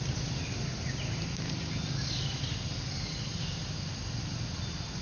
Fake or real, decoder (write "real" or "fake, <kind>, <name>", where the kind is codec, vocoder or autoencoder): real